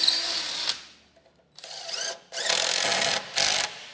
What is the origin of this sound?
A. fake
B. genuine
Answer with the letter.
B